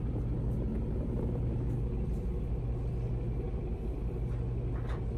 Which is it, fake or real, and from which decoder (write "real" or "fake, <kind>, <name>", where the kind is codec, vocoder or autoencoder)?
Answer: real